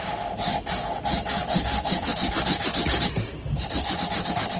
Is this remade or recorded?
recorded